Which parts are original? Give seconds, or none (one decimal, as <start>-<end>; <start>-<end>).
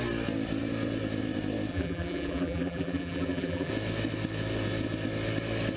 0.0-1.7; 3.7-5.8